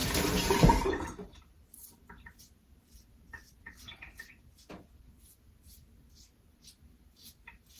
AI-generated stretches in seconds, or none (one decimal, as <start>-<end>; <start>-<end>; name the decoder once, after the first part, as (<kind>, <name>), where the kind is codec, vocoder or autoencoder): 0.0-7.8 (vocoder, BigVGAN v2)

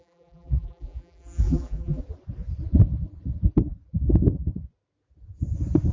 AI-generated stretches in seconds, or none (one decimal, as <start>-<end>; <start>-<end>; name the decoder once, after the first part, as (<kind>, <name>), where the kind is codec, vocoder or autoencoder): 0.0-2.0 (vocoder, BigVGAN v2)

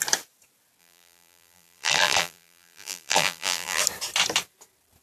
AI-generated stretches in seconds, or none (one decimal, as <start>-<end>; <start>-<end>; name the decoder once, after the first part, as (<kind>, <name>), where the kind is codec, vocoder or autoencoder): 0.8-3.8 (vocoder, BigVGAN v2)

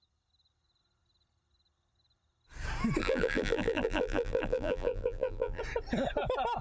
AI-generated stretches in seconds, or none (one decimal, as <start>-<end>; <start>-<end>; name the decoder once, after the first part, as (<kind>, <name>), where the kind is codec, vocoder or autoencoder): 3.0-5.6 (vocoder, BigVGAN v2)

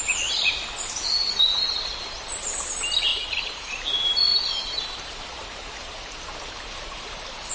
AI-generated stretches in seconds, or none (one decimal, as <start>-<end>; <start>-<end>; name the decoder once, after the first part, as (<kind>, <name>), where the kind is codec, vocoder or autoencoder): 2.0-2.6 (vocoder, BigVGAN v2); 3.1-3.7; 4.3-7.5

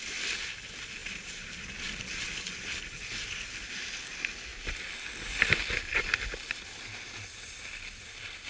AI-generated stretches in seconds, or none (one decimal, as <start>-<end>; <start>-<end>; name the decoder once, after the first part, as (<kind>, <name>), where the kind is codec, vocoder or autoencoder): 1.0-1.5 (vocoder, BigVGAN v2)

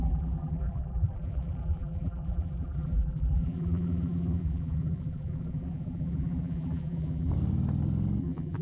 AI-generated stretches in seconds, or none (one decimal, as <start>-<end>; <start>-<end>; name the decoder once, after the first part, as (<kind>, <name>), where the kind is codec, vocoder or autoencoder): 0.0-7.3 (vocoder, BigVGAN v2); 8.2-8.6